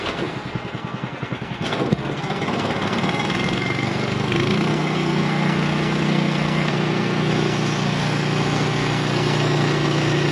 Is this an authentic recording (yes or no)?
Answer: no